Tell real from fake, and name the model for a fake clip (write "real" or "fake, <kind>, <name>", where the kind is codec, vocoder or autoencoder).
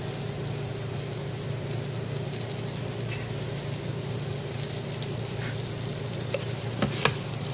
real